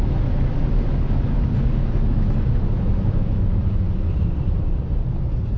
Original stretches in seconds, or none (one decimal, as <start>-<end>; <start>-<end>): 0.0-1.8; 4.1-5.6